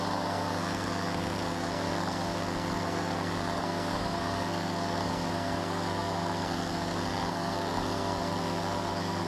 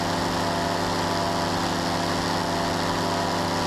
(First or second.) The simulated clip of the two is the first